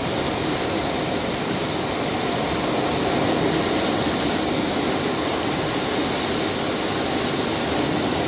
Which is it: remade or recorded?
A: recorded